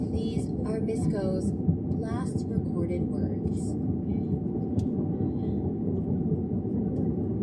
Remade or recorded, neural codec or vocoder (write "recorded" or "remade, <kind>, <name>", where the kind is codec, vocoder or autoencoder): recorded